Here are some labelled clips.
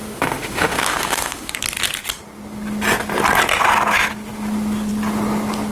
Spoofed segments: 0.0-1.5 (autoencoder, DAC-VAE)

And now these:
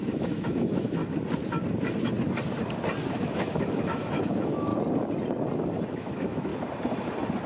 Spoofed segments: 0.0-1.0 (autoencoder, DAC-VAE); 3.1-4.7; 5.9-6.5

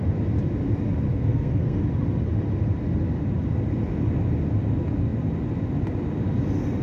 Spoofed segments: 1.1-1.8 (codec, SNAC)

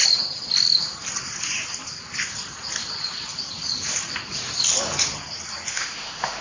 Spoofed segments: 5.7-6.4 (autoencoder, DAC-VAE)

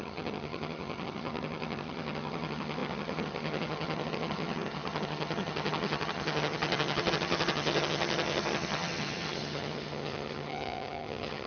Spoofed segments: 0.0-11.5 (vocoder, HiFi-GAN)